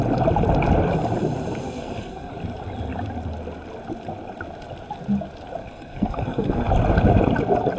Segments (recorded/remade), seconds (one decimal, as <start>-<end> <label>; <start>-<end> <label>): 0.0-1.6 recorded; 1.6-2.3 remade; 2.3-5.6 recorded; 5.6-6.7 remade; 6.7-7.8 recorded